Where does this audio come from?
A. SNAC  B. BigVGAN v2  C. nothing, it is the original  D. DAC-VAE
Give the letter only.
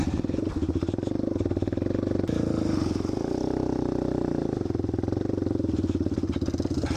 C